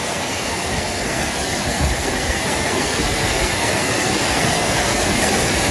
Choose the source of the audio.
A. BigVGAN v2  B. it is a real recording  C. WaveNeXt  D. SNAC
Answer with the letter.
D